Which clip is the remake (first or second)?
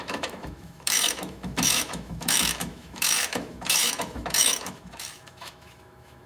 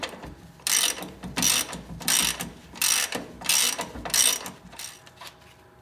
first